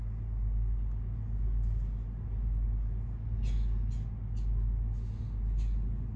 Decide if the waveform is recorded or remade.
recorded